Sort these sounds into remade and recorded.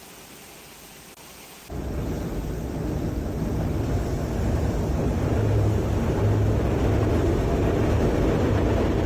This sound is recorded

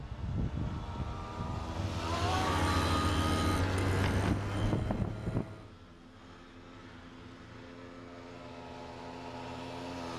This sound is recorded